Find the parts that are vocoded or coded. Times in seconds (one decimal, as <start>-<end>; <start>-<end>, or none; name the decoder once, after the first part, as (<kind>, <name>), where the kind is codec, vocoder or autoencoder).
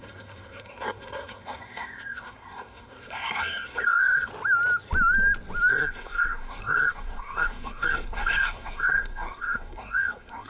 0.0-4.3 (codec, SNAC); 5.7-10.5